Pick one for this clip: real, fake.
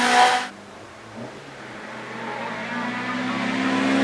real